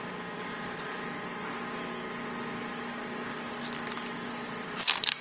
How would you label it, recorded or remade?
recorded